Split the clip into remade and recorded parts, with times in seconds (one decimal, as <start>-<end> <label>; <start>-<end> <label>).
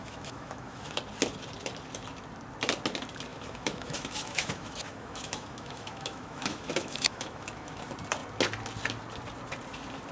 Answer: 0.0-1.0 remade; 1.0-3.3 recorded; 3.3-7.8 remade; 7.8-10.1 recorded